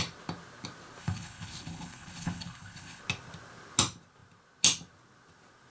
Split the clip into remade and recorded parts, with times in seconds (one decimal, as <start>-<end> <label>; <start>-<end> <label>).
0.0-1.0 recorded; 1.0-3.0 remade; 3.0-5.7 recorded